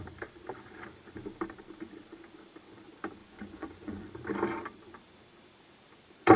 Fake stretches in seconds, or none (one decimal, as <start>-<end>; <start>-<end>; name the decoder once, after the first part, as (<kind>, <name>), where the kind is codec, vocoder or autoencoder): 3.2-4.1 (vocoder, Vocos)